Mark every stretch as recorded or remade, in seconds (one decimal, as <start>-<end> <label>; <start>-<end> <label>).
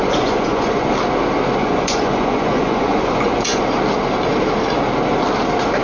0.0-0.9 remade; 0.9-1.6 recorded; 1.6-3.6 remade; 3.6-5.8 recorded